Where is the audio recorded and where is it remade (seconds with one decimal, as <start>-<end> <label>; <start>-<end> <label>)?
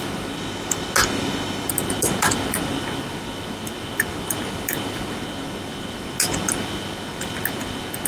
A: 0.0-4.1 recorded; 4.1-5.0 remade; 5.0-8.1 recorded